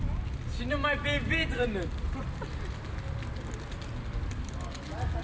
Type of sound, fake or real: real